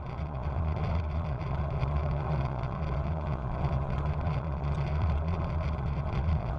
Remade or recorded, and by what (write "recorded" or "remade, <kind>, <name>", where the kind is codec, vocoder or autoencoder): remade, vocoder, Vocos